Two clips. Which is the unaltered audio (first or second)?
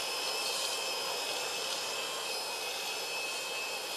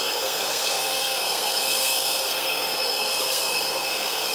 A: first